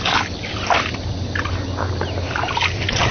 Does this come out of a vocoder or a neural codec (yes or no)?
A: no